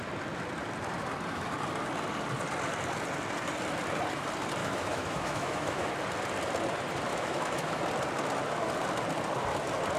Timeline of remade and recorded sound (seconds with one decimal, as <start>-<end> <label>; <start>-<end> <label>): 0.0-4.6 recorded; 4.6-5.9 remade; 5.9-7.1 recorded; 7.1-7.8 remade; 7.8-10.0 recorded